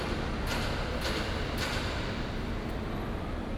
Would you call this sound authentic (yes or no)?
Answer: yes